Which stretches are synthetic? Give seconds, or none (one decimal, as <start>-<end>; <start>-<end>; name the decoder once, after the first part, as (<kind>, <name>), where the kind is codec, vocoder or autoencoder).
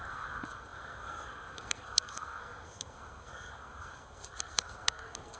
0.0-5.4 (codec, SNAC)